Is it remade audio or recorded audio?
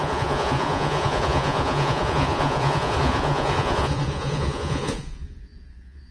remade